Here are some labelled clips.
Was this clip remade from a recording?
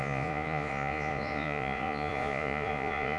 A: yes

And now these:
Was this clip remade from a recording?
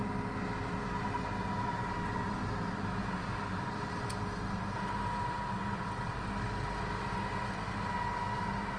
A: no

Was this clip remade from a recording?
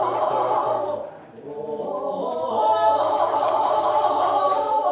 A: yes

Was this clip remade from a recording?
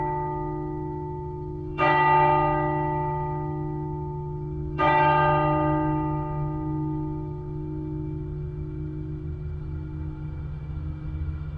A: yes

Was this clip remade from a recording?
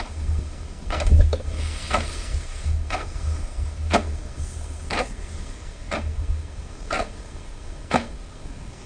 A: yes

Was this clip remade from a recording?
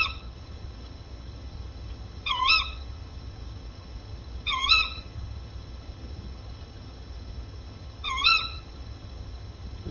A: yes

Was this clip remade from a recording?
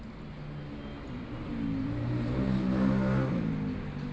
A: no